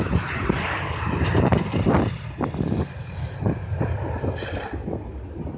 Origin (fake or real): real